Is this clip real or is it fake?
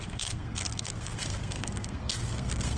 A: fake